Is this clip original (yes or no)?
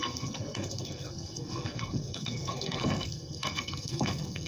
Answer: no